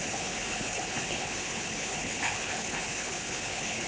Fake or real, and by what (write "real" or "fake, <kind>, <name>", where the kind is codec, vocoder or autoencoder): fake, codec, HILCodec